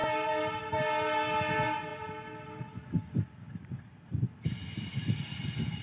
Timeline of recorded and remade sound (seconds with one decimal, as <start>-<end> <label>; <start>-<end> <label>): 0.0-5.8 recorded